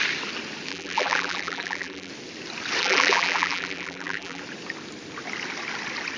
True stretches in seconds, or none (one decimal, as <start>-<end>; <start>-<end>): 0.0-0.7; 2.1-2.8; 4.4-6.2